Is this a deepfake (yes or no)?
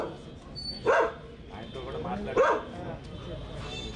no